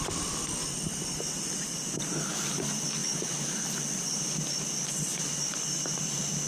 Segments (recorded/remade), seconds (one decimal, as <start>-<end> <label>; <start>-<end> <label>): 0.0-6.5 recorded